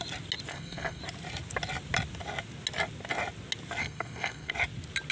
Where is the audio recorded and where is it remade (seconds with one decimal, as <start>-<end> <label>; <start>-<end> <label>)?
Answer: 0.0-0.5 recorded; 0.5-1.0 remade; 1.0-3.8 recorded; 3.8-4.5 remade; 4.5-5.1 recorded